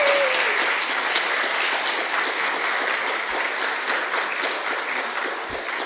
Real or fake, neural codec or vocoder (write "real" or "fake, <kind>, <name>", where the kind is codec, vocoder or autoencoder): real